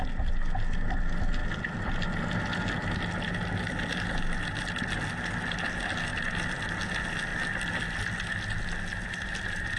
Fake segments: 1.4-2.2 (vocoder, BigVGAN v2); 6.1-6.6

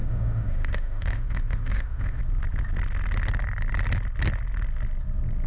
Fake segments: 0.0-2.2 (autoencoder, DAC-VAE)

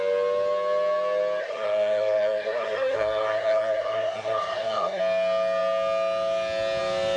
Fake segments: 1.4-5.0 (codec, SNAC)

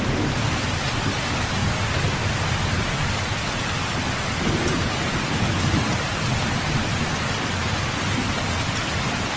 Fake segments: 0.0-1.6 (vocoder, BigVGAN v2); 5.9-6.9; 8.9-9.4

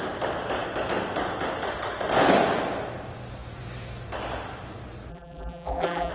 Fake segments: 5.1-6.1 (vocoder, BigVGAN v2)

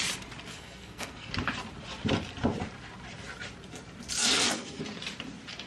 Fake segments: 0.5-1.3 (codec, SNAC); 4.2-4.8

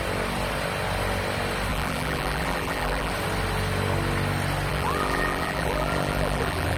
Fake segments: 1.7-3.1 (vocoder, BigVGAN v2); 4.7-6.8

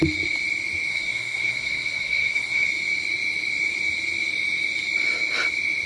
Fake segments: 0.9-2.7 (codec, SNAC)